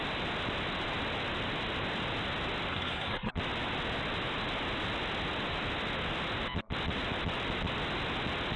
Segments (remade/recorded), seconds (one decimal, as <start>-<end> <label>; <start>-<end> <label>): 0.0-2.7 recorded; 2.7-3.3 remade; 3.3-8.6 recorded